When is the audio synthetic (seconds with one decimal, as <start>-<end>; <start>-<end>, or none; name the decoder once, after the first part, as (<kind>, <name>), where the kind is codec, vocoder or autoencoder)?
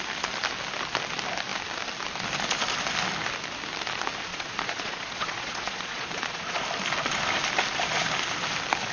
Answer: 4.3-6.6 (vocoder, Vocos)